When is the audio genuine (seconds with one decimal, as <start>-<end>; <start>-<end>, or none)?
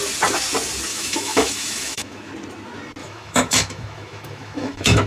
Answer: 0.0-0.9; 2.3-3.0